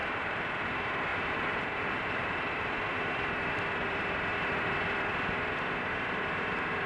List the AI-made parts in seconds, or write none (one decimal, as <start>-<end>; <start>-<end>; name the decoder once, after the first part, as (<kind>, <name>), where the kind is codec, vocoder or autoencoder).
0.0-0.6 (vocoder, BigVGAN v2); 1.1-2.7